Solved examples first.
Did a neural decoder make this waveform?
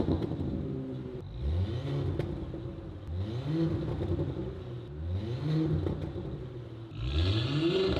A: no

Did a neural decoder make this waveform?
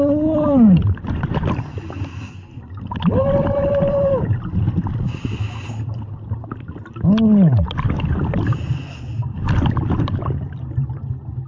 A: no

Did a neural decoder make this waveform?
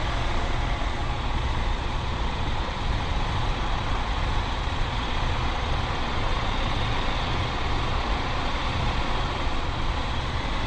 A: yes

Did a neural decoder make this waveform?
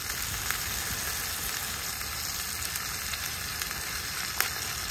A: no